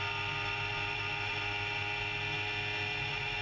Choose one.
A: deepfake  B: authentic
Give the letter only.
B